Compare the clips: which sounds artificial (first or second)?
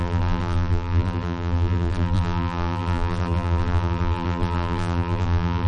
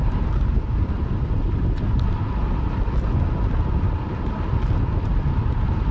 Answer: first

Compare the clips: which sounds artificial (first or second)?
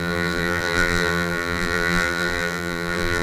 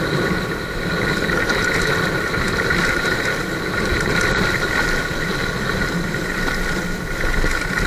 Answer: first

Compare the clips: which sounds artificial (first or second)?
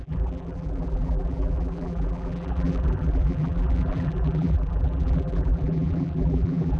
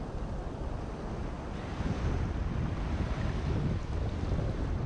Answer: first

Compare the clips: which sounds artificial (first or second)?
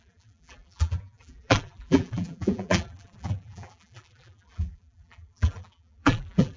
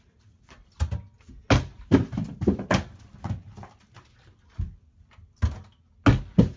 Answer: first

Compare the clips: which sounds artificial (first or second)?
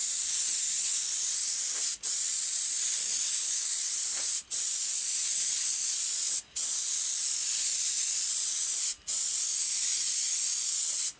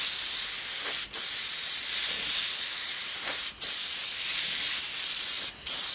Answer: first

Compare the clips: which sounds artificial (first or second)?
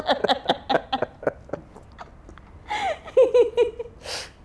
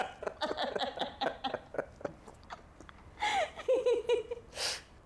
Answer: second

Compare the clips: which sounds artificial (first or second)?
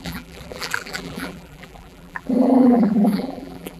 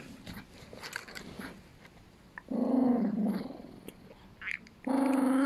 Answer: first